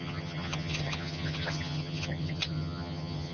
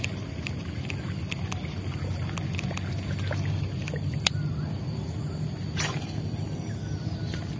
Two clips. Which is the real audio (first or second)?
second